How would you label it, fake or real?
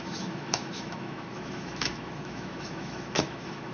fake